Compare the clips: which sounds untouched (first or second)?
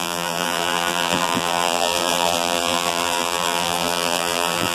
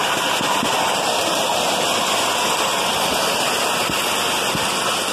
second